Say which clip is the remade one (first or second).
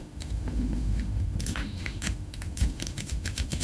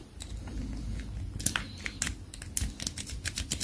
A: first